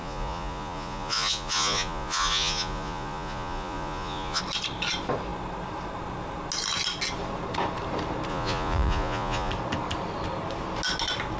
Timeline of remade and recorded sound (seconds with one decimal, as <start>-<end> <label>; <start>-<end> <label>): 0.0-4.4 remade; 4.4-8.3 recorded; 8.3-9.5 remade; 9.5-11.4 recorded